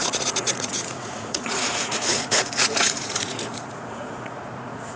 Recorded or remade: remade